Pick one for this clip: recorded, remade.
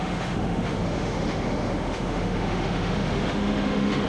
remade